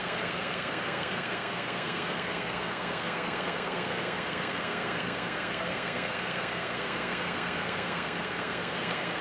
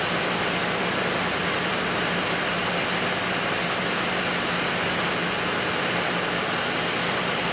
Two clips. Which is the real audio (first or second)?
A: second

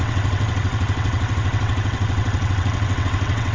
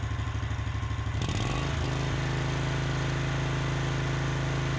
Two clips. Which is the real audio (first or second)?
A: second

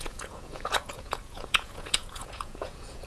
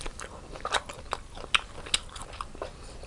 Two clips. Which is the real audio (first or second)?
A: second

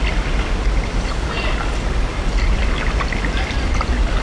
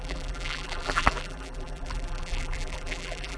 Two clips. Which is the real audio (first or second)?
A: first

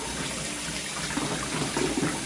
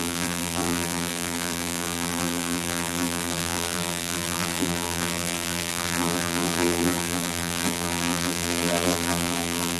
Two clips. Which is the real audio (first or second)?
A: first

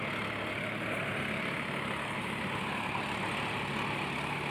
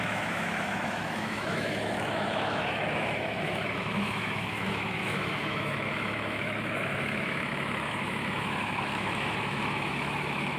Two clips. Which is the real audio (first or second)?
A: first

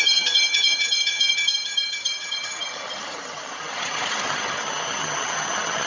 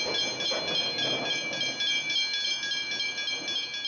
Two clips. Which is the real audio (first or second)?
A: second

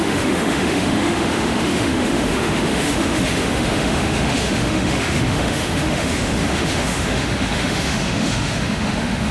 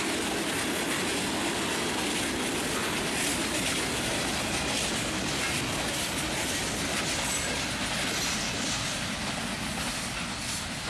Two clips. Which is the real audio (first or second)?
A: second